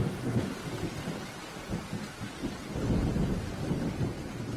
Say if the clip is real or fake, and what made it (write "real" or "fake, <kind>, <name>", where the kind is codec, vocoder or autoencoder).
real